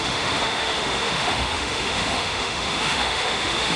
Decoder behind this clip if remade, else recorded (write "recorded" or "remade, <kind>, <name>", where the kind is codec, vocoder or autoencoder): remade, autoencoder, DAC-VAE